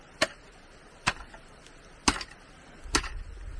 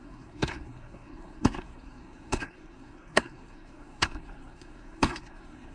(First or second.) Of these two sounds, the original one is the first